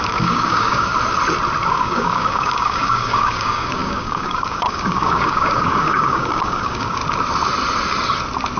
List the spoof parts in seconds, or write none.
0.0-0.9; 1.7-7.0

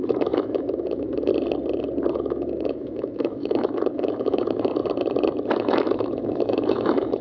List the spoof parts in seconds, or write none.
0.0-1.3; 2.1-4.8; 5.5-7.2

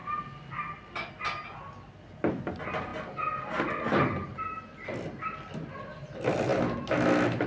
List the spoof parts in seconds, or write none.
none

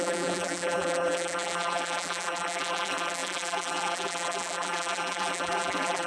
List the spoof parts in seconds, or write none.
0.0-6.1

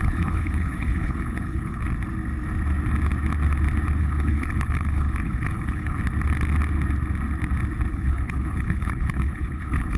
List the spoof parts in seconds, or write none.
0.0-1.8; 4.0-6.0; 7.9-10.0

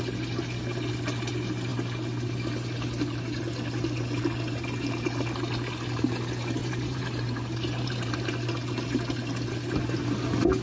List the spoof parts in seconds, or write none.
6.6-8.1

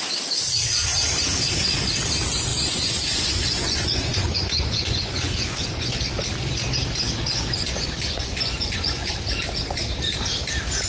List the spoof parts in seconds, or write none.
2.5-6.0; 7.3-9.1

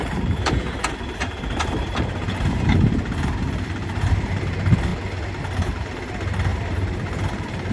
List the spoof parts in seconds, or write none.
0.0-4.4; 6.5-7.7